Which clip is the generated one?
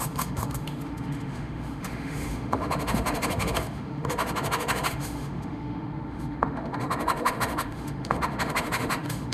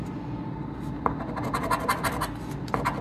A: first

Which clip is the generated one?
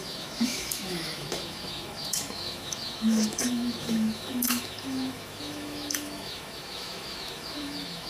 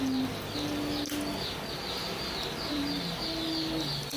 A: first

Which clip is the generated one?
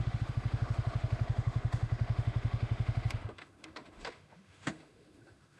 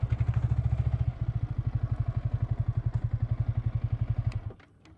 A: first